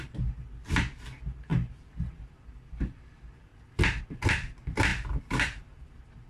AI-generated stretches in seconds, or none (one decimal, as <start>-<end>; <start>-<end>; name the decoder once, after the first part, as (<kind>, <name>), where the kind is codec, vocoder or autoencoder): 0.0-3.5 (vocoder, BigVGAN v2); 4.0-6.3